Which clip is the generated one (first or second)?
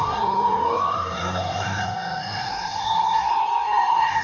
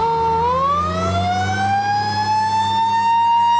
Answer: first